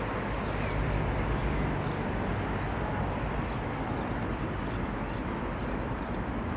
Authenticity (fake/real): real